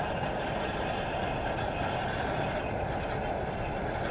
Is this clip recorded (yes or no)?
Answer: yes